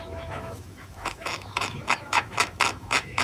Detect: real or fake fake